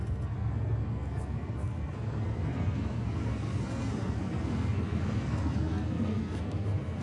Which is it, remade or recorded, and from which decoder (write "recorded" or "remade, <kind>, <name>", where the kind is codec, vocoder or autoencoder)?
remade, codec, SNAC